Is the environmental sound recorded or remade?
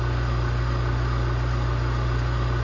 recorded